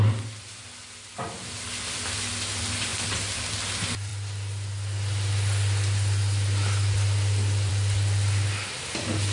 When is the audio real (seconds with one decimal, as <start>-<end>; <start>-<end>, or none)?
0.0-2.9; 3.4-9.3